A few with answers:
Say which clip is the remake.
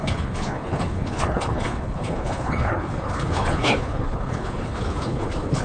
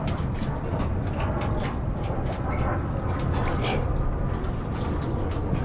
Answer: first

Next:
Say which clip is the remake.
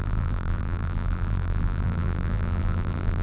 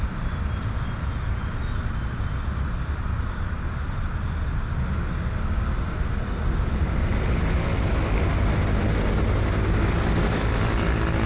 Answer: first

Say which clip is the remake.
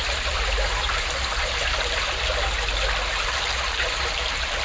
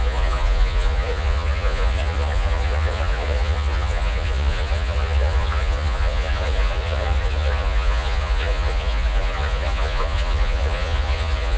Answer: second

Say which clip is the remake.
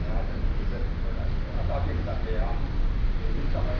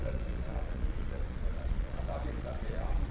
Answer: second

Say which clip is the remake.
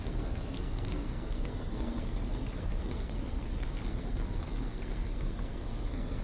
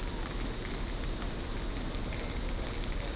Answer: first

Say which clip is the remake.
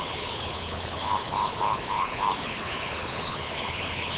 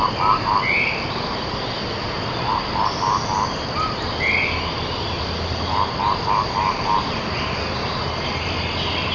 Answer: first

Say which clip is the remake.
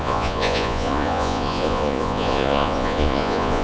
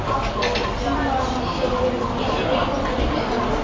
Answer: first